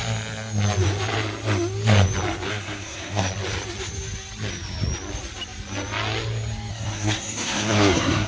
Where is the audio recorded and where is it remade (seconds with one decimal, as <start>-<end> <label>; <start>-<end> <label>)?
0.0-2.5 recorded; 2.5-3.2 remade; 3.2-6.7 recorded; 6.7-8.3 remade